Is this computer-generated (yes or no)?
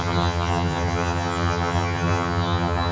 yes